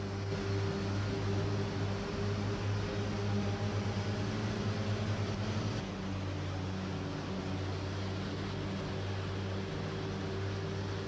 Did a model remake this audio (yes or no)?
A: no